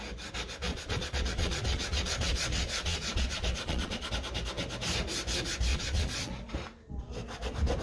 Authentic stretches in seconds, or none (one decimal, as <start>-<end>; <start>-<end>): 0.0-0.7; 4.1-5.7; 6.3-7.8